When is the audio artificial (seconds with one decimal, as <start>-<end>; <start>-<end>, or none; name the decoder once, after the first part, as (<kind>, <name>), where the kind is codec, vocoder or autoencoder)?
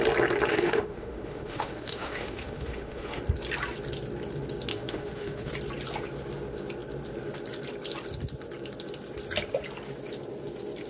0.5-3.2 (autoencoder, DAC-VAE); 4.7-5.5